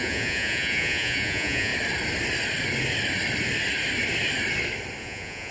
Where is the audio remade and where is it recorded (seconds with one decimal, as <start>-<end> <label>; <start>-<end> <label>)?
0.0-1.7 remade; 1.7-5.0 recorded; 5.0-5.5 remade

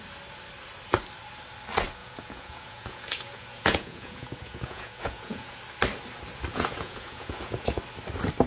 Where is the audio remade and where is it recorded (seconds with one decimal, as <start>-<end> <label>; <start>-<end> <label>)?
0.0-2.0 recorded; 2.0-5.6 remade; 5.6-6.5 recorded; 6.5-7.8 remade; 7.8-8.5 recorded

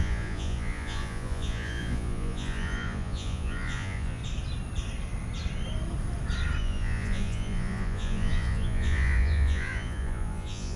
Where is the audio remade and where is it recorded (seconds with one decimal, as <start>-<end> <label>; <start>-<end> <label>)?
0.0-4.2 remade; 4.2-6.6 recorded; 6.6-10.8 remade